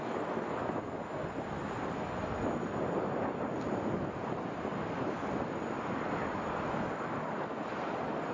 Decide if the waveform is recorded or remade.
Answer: recorded